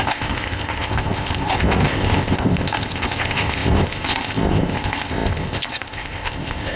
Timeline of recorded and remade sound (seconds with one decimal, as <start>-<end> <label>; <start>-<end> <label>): 0.0-6.8 remade